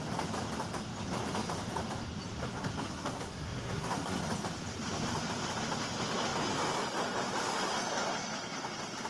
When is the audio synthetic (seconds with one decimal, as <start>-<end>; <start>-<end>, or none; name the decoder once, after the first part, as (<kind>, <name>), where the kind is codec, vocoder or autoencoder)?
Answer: 2.4-4.2 (codec, SNAC)